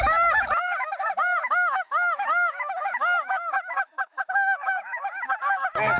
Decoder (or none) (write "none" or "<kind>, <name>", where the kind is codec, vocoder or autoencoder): autoencoder, DAC-VAE